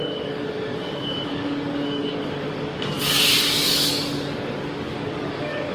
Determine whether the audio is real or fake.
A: fake